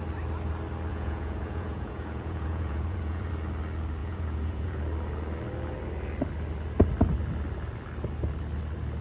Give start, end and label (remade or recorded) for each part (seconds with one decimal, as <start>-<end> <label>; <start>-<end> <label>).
0.0-0.9 recorded; 0.9-3.3 remade; 3.3-4.0 recorded; 4.0-4.8 remade; 4.8-9.0 recorded